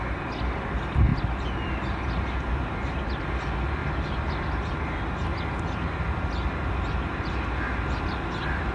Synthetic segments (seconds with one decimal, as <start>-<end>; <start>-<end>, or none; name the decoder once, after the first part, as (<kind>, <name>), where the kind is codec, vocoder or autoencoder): none